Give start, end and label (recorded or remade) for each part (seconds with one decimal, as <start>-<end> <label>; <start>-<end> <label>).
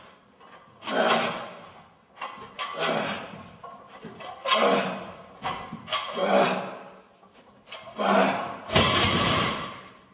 0.0-8.2 recorded; 8.2-9.7 remade; 9.7-10.1 recorded